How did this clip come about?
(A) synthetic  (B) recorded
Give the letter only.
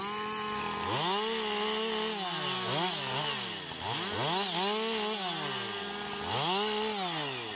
B